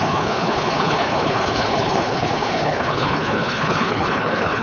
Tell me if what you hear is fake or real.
fake